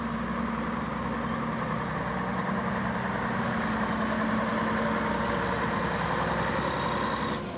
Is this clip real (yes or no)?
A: yes